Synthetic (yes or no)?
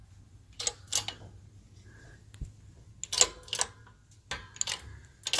no